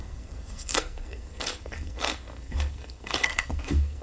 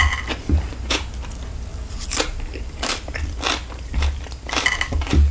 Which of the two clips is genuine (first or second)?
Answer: second